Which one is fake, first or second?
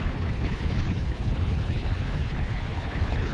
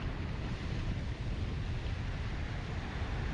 first